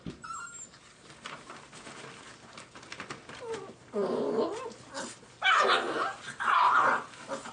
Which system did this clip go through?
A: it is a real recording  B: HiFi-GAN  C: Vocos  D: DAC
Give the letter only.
A